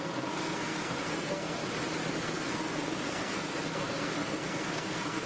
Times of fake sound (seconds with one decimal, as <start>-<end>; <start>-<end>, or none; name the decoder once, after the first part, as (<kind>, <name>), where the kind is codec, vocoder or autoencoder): 0.0-1.6 (codec, SNAC); 2.2-5.3